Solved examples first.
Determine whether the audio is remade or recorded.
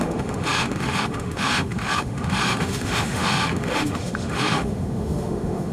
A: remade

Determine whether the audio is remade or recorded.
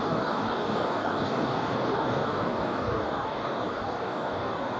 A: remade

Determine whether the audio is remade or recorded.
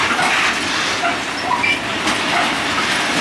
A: recorded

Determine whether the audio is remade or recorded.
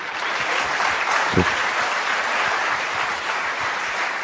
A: remade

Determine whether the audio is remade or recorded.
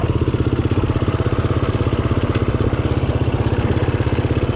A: recorded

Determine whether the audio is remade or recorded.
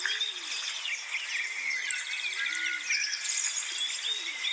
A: recorded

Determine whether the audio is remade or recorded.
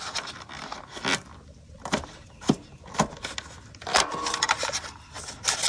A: recorded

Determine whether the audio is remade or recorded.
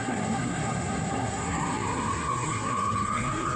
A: remade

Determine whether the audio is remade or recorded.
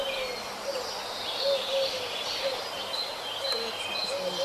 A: recorded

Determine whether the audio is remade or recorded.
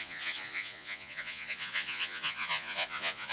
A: remade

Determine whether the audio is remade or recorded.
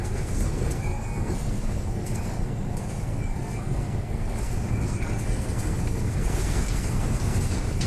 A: remade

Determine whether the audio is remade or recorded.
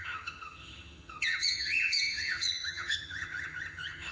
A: remade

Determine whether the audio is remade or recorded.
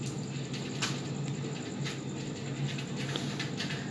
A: recorded